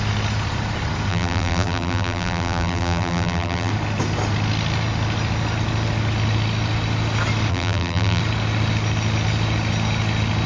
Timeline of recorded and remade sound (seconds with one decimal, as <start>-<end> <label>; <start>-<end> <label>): 0.0-1.1 recorded; 1.1-3.7 remade; 3.7-7.5 recorded; 7.5-8.2 remade; 8.2-10.5 recorded